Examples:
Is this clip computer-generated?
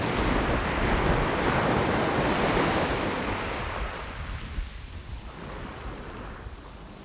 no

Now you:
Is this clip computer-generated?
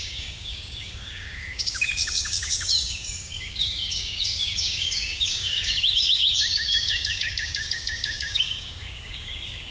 yes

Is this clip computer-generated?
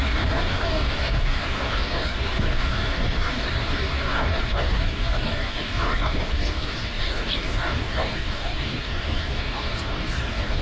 yes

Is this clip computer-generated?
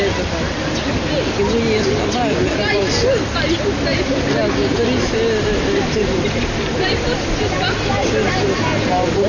no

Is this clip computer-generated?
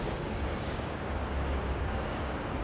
yes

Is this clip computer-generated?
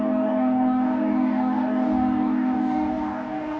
yes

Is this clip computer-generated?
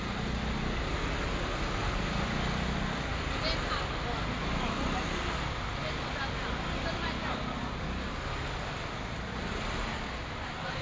no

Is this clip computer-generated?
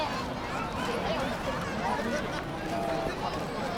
no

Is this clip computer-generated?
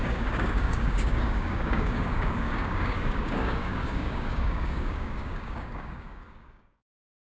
yes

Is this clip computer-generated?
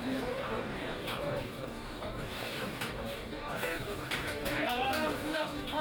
yes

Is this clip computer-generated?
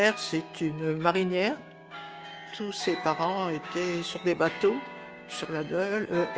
yes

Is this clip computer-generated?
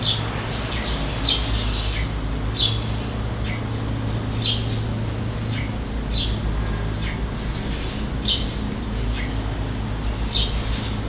no